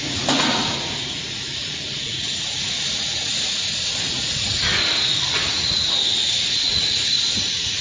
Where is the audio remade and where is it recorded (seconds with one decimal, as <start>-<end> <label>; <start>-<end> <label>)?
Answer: 0.0-4.7 remade; 4.7-5.5 recorded; 5.5-7.8 remade